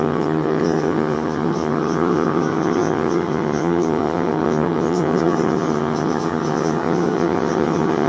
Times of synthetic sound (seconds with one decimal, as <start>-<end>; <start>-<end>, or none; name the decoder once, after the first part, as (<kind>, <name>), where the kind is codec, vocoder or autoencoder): 0.0-8.1 (vocoder, HiFi-GAN)